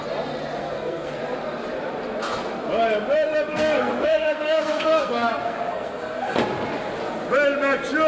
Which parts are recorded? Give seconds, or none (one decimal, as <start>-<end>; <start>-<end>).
0.0-0.6; 1.2-3.5; 6.4-8.1